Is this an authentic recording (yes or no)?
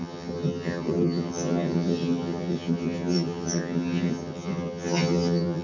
no